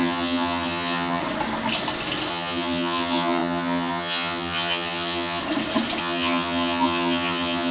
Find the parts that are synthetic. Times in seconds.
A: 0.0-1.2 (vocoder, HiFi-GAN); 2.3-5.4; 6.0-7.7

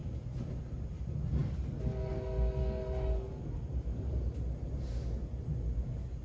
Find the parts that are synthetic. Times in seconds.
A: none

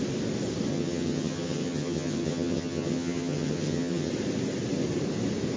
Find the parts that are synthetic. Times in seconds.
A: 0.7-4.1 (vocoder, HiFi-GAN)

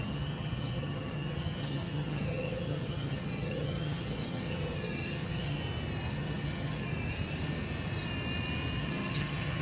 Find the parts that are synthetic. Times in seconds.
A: 0.0-5.6 (vocoder, HiFi-GAN); 6.1-6.9; 8.8-9.6

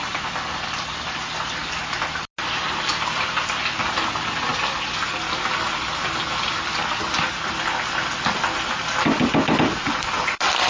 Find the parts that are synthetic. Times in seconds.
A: none